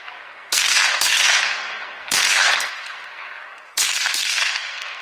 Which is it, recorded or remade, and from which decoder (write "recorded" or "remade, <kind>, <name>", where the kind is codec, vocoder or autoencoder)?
remade, codec, SNAC